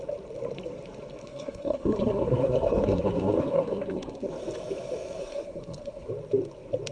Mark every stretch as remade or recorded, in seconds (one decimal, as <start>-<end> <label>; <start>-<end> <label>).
0.0-1.2 recorded; 1.2-4.3 remade; 4.3-5.2 recorded; 5.2-6.1 remade; 6.1-6.9 recorded